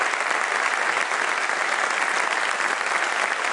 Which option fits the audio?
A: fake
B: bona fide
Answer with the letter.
B